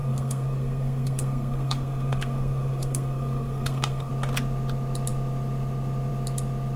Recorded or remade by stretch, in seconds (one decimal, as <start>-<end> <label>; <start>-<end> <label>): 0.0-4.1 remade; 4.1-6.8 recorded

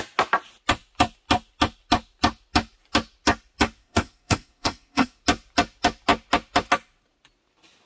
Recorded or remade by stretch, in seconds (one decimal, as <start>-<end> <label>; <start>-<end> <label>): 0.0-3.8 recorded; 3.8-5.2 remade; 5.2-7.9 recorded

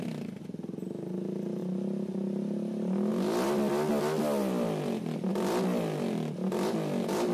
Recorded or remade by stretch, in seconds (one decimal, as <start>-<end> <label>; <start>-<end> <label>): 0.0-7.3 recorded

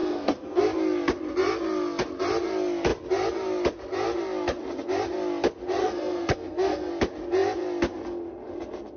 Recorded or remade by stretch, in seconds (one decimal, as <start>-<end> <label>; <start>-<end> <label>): 0.0-0.6 remade; 0.6-5.8 recorded; 5.8-6.9 remade; 6.9-9.0 recorded

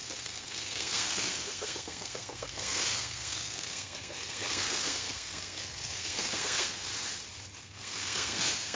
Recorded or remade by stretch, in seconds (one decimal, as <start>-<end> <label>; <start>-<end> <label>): 0.0-6.9 remade; 6.9-7.6 recorded; 7.6-8.8 remade

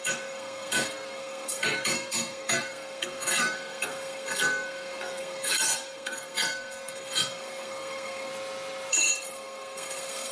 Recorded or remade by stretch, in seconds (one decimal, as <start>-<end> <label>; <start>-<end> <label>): 0.0-8.3 remade; 8.3-8.9 recorded; 8.9-10.3 remade

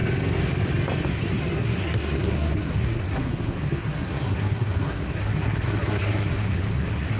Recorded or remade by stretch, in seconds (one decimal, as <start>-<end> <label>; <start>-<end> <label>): 0.0-1.1 recorded; 1.1-7.2 remade

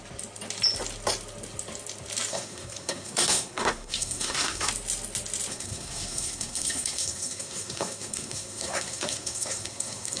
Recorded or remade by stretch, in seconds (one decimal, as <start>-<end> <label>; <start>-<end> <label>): 0.0-2.3 recorded; 2.3-4.7 remade; 4.7-5.5 recorded; 5.5-10.2 remade